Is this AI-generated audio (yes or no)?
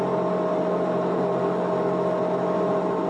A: no